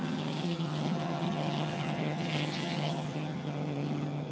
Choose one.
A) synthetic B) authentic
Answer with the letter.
A